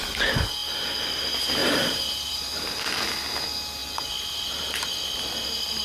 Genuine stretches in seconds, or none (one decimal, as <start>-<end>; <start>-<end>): 0.0-0.6; 1.2-1.6; 2.6-3.8; 4.6-5.8